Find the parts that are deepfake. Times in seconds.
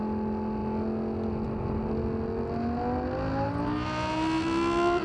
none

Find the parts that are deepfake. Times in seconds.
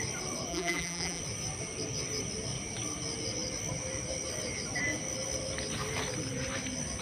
0.5-1.2 (vocoder, BigVGAN v2)